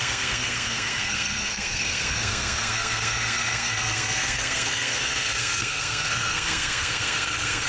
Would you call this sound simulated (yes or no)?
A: yes